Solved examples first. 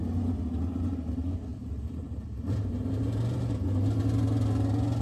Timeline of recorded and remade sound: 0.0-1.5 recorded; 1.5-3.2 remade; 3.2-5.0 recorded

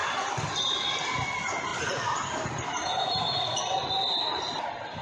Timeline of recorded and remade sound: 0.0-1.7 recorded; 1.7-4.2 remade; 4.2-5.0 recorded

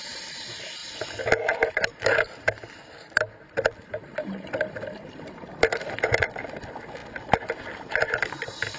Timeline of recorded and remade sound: 0.0-0.8 remade; 0.8-1.7 recorded; 1.7-7.0 remade; 7.0-7.9 recorded; 7.9-8.8 remade